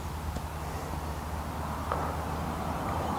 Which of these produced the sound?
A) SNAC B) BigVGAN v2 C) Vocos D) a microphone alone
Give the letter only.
D